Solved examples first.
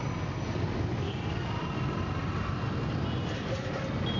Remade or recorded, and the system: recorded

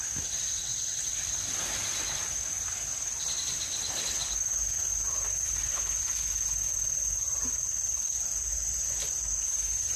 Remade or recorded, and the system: recorded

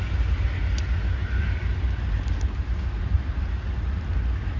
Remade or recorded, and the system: recorded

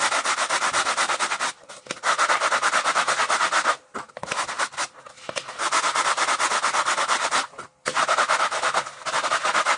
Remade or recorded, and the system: recorded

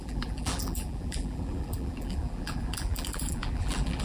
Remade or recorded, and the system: remade, vocoder, BigVGAN v2